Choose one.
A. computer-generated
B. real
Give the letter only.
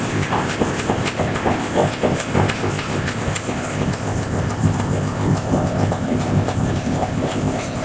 A